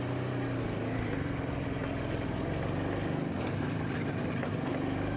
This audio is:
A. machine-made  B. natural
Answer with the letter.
B